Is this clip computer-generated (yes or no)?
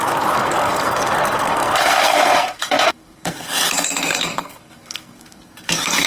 yes